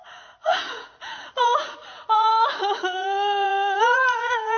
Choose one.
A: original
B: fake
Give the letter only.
B